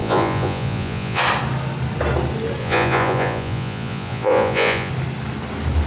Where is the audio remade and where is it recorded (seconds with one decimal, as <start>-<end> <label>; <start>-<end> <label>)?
0.0-1.2 remade; 1.2-2.6 recorded; 2.6-4.9 remade; 4.9-5.9 recorded